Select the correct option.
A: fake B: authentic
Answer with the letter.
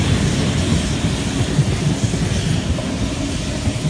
B